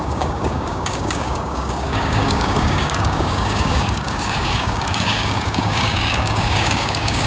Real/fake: fake